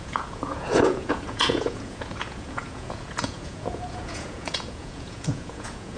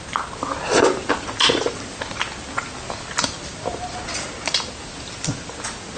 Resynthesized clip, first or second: first